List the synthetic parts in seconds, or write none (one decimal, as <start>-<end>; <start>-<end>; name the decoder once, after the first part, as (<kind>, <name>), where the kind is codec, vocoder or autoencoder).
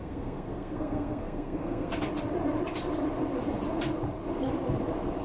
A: 0.0-1.9 (codec, SNAC)